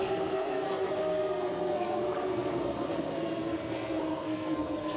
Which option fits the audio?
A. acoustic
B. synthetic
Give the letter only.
B